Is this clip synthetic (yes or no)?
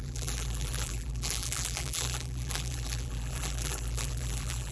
yes